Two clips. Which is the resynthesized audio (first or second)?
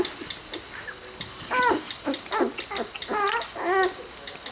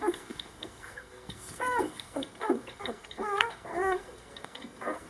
second